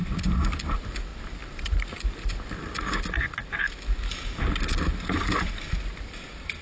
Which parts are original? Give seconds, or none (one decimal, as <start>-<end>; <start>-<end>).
0.0-1.1; 2.3-4.9